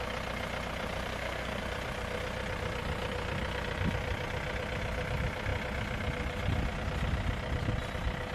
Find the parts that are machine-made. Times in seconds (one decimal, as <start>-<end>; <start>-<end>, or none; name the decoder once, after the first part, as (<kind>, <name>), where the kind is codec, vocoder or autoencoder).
1.1-1.6 (codec, SNAC)